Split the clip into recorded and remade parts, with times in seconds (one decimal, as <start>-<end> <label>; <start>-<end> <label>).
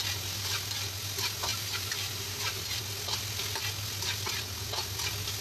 0.0-1.5 recorded; 1.5-2.8 remade; 2.8-5.4 recorded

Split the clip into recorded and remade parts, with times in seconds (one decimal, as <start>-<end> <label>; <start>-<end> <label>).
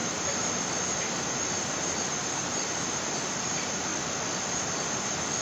0.0-3.9 remade; 3.9-4.5 recorded; 4.5-5.4 remade